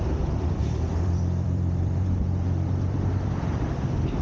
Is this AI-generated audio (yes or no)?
yes